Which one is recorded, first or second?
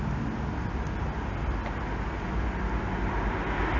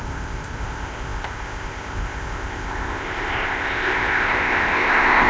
first